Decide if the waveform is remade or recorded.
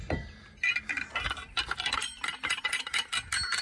recorded